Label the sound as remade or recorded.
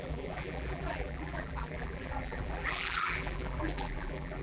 remade